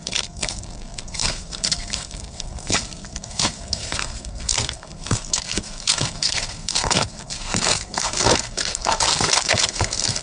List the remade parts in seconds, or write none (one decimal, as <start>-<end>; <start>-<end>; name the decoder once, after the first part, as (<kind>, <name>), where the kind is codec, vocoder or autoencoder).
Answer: 0.0-10.2 (codec, SNAC)